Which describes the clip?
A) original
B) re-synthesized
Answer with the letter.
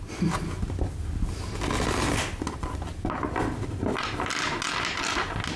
A